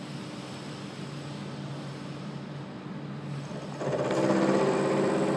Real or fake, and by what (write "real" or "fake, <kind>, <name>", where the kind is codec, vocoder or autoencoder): real